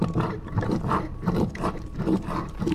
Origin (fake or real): fake